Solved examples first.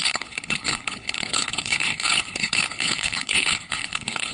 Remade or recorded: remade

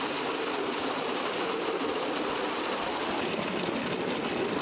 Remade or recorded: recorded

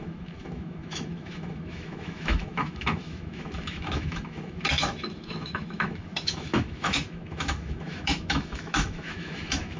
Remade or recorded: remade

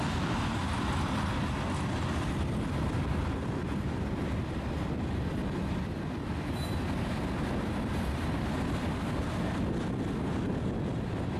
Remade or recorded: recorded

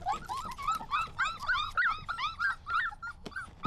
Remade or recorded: recorded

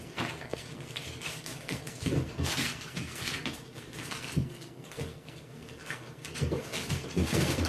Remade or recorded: remade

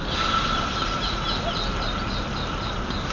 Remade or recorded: recorded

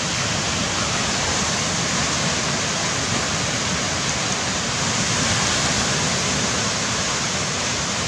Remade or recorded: recorded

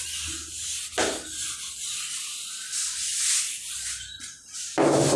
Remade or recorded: recorded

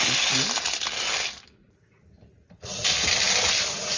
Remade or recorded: recorded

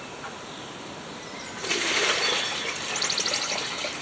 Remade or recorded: recorded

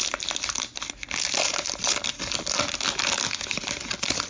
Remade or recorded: recorded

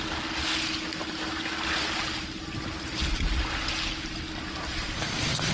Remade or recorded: recorded